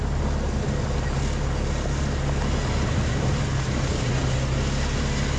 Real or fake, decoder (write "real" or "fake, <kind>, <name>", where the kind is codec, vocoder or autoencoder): real